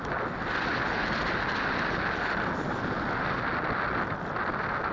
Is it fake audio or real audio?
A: real